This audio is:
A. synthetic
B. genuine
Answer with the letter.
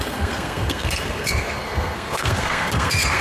A